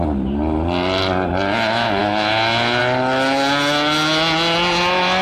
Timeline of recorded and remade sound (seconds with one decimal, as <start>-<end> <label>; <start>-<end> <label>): 0.0-5.2 recorded